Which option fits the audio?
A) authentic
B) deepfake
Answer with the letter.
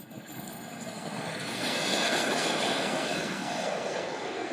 B